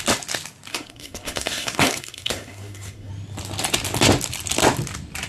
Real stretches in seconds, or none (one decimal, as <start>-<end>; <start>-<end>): 0.0-0.7; 3.1-5.3